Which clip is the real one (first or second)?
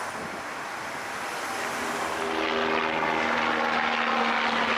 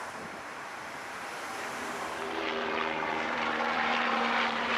first